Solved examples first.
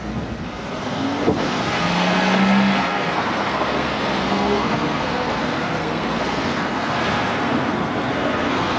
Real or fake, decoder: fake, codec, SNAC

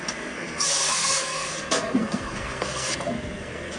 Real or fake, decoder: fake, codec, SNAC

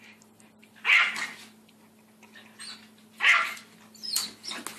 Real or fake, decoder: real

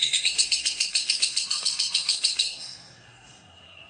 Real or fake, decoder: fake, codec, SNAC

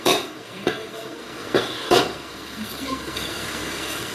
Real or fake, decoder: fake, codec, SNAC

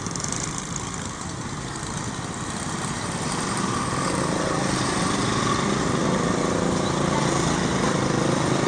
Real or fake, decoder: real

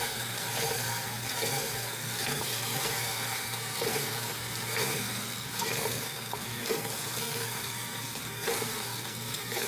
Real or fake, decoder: fake, codec, SNAC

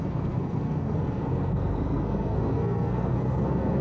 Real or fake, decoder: fake, codec, SNAC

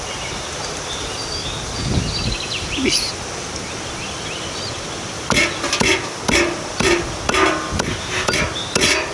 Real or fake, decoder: real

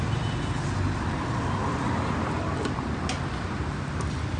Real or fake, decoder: real